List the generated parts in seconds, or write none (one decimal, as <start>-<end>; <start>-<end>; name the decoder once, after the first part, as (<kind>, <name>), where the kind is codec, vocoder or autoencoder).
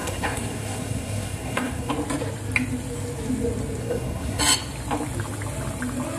0.0-1.9 (codec, SNAC); 3.8-4.4